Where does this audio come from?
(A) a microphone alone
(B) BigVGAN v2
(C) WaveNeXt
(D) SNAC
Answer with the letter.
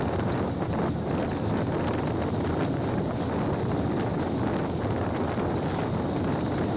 A